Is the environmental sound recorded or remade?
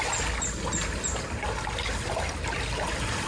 recorded